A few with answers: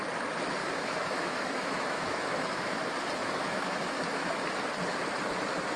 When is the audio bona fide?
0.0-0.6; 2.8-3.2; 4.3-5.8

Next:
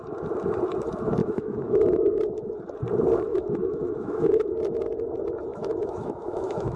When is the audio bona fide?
0.0-1.2; 2.2-3.3; 4.5-5.5

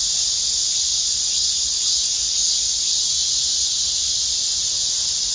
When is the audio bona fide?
0.0-0.9; 1.8-5.3

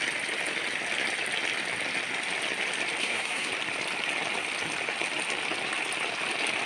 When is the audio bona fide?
0.0-3.0; 3.5-6.7